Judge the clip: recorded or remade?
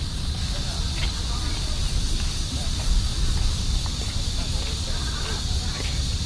recorded